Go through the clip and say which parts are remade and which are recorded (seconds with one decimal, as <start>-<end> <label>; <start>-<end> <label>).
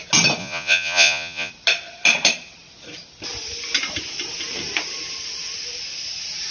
0.0-0.4 recorded; 0.4-1.5 remade; 1.5-6.5 recorded